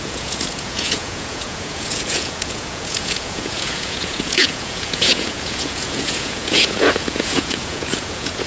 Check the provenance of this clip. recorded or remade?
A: remade